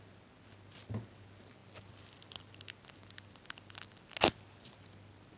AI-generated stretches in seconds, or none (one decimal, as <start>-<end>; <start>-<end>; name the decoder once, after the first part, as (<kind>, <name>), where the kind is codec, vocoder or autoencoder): none